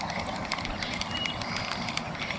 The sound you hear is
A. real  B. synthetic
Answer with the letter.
A